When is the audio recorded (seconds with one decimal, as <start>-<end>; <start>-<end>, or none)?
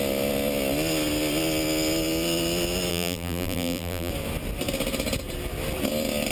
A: 0.0-2.9; 4.1-6.3